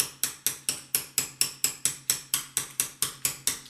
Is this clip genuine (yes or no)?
yes